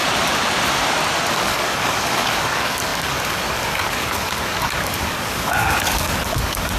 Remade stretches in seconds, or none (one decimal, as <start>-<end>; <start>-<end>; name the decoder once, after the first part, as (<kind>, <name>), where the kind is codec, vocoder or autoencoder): 1.3-6.8 (codec, DAC)